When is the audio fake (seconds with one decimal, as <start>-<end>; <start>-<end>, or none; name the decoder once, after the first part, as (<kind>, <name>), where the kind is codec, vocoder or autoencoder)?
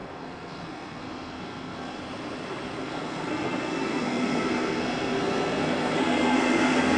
0.0-2.0 (codec, SNAC); 2.8-7.0